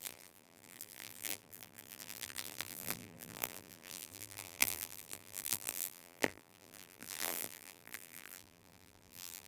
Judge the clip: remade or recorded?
remade